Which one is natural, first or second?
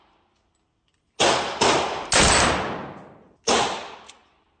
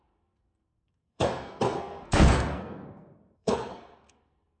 first